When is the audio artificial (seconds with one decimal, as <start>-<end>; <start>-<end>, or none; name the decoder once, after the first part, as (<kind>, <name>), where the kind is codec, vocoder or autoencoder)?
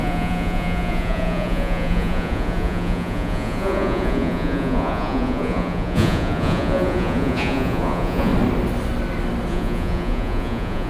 0.0-8.3 (vocoder, Vocos); 9.5-10.9